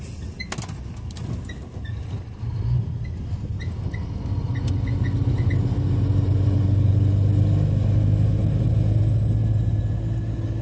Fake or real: real